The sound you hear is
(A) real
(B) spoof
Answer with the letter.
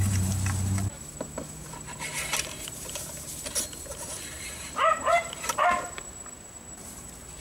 B